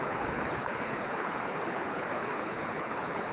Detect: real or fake fake